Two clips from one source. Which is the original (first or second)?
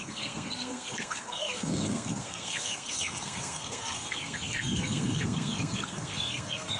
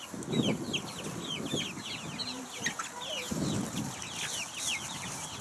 second